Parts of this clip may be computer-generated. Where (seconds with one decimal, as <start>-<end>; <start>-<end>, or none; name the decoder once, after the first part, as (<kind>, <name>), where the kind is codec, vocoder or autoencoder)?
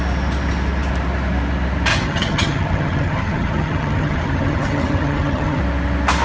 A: 1.9-5.6 (vocoder, HiFi-GAN)